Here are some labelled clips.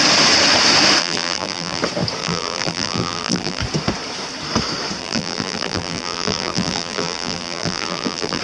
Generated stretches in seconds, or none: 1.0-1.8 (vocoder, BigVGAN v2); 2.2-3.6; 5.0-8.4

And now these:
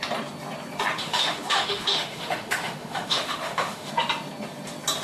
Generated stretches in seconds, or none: 0.9-3.9 (autoencoder, DAC-VAE)

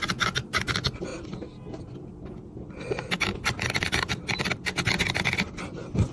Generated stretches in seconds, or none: 3.3-5.5 (vocoder, BigVGAN v2)

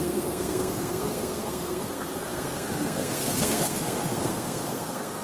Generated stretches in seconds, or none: 0.0-5.2 (codec, SNAC)

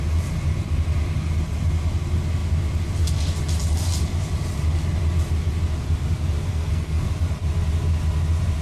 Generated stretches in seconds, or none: 6.5-7.1 (codec, SNAC)

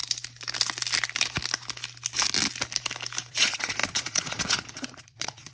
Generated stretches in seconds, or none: 3.3-5.5 (vocoder, Vocos)